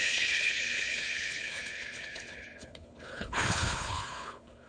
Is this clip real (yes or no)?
no